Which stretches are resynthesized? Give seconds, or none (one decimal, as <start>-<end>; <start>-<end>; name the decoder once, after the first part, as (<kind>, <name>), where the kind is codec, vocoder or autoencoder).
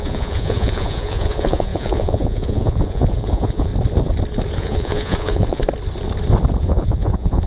0.0-3.7 (vocoder, Vocos); 4.6-5.6; 6.6-7.5